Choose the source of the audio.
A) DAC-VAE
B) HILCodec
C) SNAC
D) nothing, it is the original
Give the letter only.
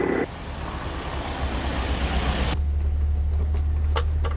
D